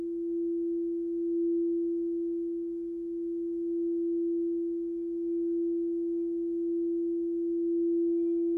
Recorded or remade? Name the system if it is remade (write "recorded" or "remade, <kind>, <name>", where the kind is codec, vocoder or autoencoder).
recorded